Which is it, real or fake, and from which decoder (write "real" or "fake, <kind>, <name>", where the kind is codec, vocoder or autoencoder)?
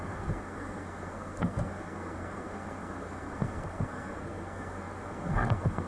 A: fake, codec, SNAC